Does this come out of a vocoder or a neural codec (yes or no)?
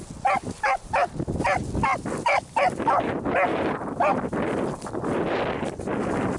no